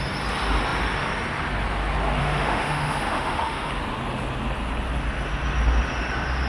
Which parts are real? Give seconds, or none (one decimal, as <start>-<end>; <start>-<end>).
0.0-2.2; 3.7-6.5